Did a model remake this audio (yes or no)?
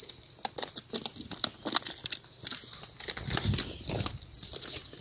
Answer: no